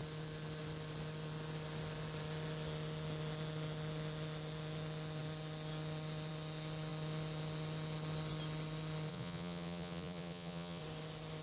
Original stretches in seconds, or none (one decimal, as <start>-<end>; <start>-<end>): 0.0-9.1; 10.8-11.4